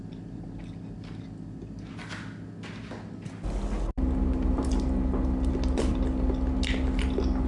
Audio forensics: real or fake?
real